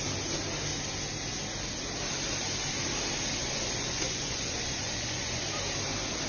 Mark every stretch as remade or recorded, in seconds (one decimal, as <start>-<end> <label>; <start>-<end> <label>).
0.0-3.4 recorded; 3.4-5.4 remade; 5.4-6.3 recorded